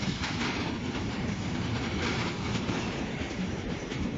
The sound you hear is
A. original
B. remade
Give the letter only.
B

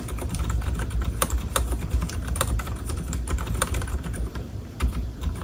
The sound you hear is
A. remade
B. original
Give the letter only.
A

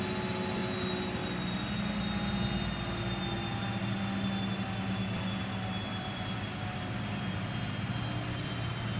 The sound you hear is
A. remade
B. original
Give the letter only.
B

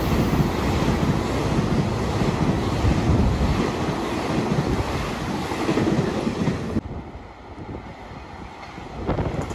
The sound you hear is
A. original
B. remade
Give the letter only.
A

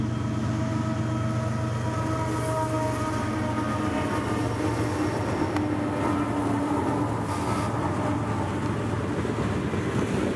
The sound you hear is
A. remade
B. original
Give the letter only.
B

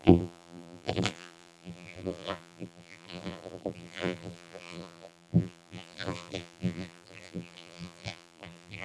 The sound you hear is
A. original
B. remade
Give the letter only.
B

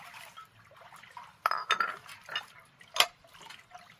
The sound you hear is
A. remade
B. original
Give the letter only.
B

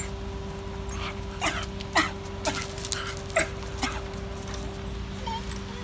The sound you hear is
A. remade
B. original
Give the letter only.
B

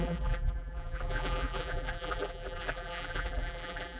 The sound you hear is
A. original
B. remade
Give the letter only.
B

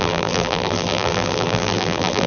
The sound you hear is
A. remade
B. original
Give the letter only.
A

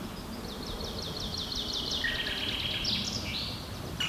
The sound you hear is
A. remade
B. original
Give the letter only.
B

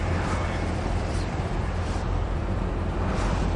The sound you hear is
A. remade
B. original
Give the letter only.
A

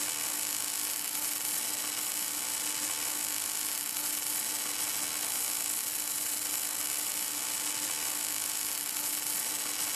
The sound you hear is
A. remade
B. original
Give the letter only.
B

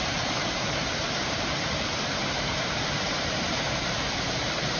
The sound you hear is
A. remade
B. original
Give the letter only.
A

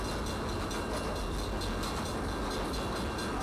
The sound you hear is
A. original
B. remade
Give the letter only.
A